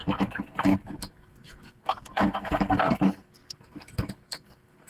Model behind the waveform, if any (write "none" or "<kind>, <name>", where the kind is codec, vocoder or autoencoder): codec, SNAC